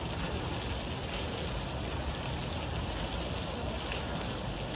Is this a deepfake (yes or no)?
no